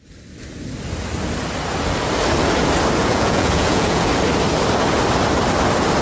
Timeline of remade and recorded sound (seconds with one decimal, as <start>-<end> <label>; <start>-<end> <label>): 0.0-3.0 recorded; 3.0-4.1 remade; 4.1-6.0 recorded